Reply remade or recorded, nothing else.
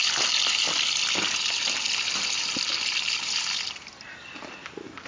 recorded